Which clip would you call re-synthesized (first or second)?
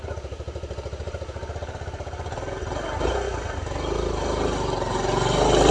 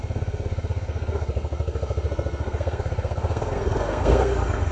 second